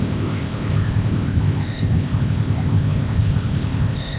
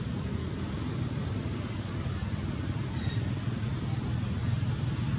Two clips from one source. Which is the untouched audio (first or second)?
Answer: second